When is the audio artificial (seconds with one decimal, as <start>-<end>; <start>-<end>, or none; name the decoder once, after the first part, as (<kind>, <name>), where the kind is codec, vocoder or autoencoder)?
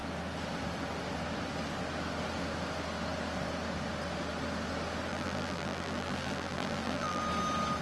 5.1-7.2 (vocoder, BigVGAN v2)